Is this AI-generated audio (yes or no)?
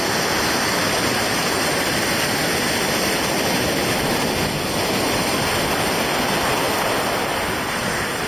no